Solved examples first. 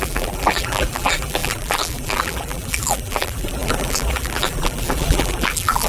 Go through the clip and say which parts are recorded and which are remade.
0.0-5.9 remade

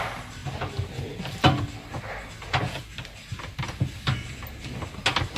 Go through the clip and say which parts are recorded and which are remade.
0.0-5.4 recorded